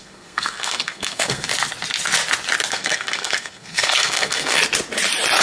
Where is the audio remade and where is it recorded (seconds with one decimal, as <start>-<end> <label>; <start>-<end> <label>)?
0.0-1.5 remade; 1.5-2.7 recorded; 2.7-4.6 remade; 4.6-5.4 recorded